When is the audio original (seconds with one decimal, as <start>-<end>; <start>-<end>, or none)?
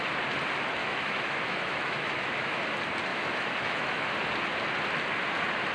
0.0-0.8; 2.6-3.1; 4.1-5.7